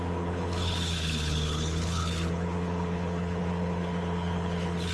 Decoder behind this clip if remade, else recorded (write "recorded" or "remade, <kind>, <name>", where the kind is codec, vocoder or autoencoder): remade, codec, HILCodec